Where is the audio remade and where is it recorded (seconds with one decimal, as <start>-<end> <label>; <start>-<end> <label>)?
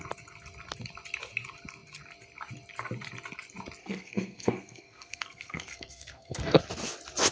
0.0-3.8 recorded; 3.8-6.6 remade; 6.6-7.3 recorded